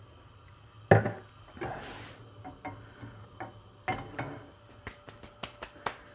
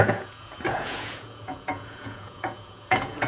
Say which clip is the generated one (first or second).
second